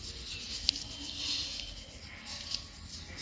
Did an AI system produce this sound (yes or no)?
no